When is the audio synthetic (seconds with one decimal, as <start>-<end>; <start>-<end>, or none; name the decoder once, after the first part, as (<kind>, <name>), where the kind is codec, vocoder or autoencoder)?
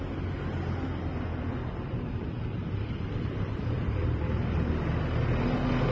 1.5-5.0 (vocoder, BigVGAN v2)